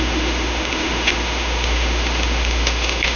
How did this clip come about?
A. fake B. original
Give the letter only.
A